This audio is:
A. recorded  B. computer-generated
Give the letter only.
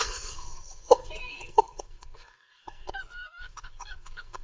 B